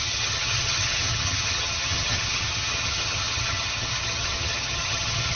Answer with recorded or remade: remade